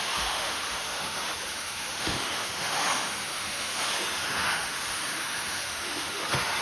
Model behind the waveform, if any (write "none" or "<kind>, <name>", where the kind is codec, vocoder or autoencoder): autoencoder, DAC-VAE